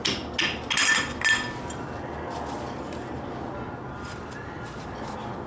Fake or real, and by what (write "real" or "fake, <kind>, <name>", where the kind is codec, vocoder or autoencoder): real